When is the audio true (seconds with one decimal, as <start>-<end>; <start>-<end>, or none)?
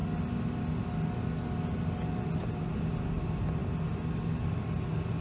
0.0-5.2